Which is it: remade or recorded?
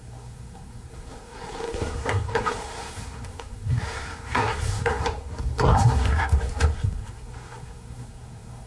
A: remade